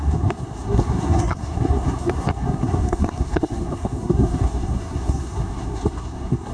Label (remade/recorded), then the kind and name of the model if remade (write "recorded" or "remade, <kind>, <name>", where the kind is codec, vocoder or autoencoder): remade, codec, SNAC